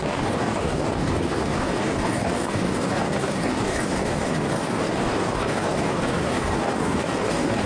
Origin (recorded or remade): remade